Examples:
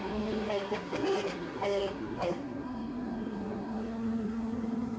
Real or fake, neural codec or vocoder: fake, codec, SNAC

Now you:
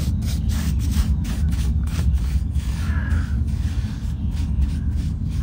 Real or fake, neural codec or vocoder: fake, codec, DAC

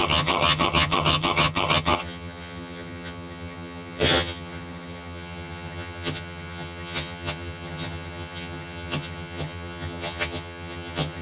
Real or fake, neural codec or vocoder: fake, vocoder, HiFi-GAN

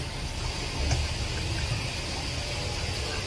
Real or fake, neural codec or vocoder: real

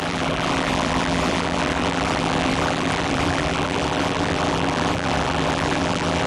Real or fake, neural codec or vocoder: fake, vocoder, BigVGAN v2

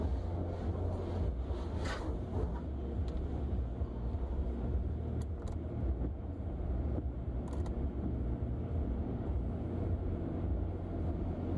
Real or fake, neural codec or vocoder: real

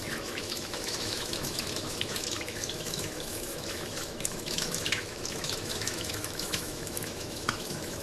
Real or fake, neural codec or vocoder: fake, autoencoder, DAC-VAE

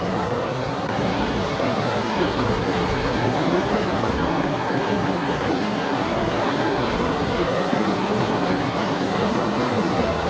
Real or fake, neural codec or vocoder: fake, codec, SNAC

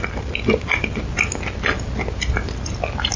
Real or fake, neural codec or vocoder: real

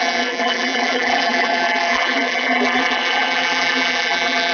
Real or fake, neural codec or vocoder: fake, vocoder, BigVGAN v2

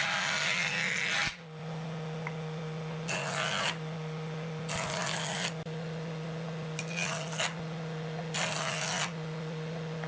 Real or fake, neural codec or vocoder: real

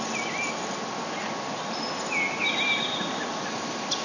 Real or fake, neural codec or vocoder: real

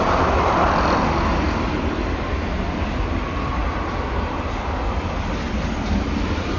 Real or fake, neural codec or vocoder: real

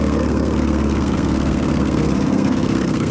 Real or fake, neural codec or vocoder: fake, codec, SNAC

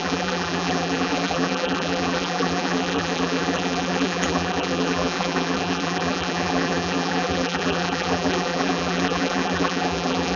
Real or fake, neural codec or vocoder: fake, vocoder, BigVGAN v2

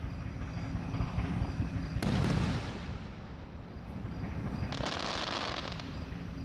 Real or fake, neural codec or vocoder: real